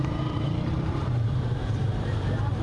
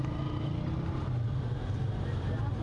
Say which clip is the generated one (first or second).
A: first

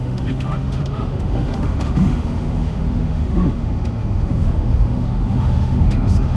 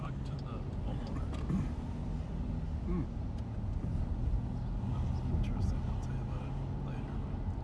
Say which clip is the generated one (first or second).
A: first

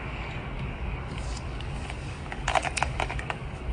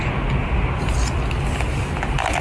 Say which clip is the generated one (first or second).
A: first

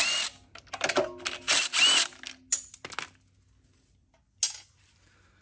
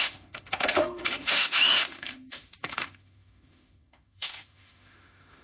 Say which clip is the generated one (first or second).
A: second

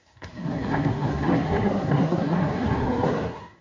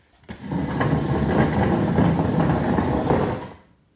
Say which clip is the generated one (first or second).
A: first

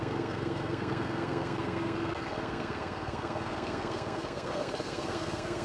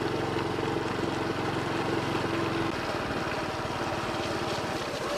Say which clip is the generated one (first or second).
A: first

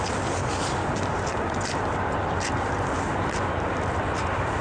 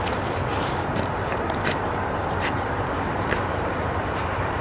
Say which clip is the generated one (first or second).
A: second